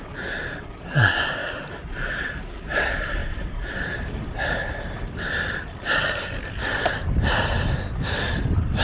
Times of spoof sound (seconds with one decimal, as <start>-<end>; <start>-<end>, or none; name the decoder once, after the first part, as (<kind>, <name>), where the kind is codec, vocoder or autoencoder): 1.4-2.4 (vocoder, BigVGAN v2); 3.2-8.1